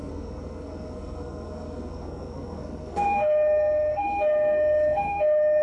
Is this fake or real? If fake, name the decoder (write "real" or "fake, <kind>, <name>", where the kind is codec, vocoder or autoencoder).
fake, codec, SNAC